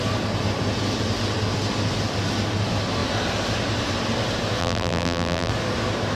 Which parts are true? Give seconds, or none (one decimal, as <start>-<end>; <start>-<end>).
0.0-4.6; 5.5-6.1